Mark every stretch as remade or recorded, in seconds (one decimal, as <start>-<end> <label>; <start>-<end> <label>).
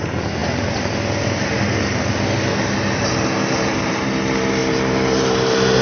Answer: 0.0-5.8 recorded